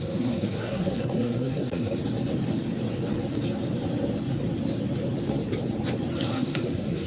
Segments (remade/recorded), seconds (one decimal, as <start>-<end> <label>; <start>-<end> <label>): 0.0-2.0 remade; 2.0-6.3 recorded; 6.3-7.1 remade